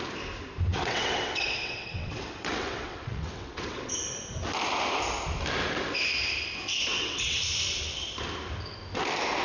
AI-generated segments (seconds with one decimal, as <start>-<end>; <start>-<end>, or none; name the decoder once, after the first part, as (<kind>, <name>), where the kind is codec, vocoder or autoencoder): 0.7-3.9 (vocoder, WaveNeXt); 6.9-7.4